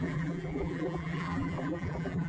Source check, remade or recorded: remade